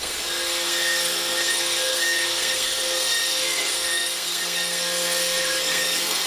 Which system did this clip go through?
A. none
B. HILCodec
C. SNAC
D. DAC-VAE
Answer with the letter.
C